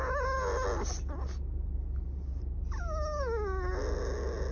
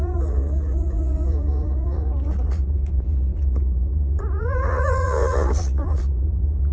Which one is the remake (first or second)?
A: second